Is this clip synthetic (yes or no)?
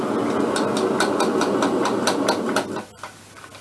no